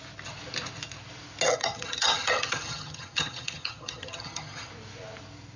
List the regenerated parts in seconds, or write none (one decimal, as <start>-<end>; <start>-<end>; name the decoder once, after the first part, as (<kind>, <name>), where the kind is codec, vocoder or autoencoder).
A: 1.5-4.7 (vocoder, HiFi-GAN)